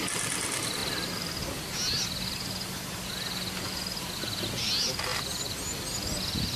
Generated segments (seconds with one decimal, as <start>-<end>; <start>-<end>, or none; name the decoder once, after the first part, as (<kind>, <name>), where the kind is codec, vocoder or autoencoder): none